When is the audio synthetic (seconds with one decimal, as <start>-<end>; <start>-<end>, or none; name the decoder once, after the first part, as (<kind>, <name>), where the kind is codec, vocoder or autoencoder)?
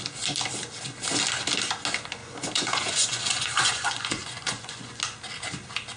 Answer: 2.2-5.0 (vocoder, Vocos)